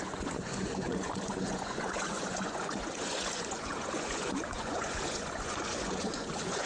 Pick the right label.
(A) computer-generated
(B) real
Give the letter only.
A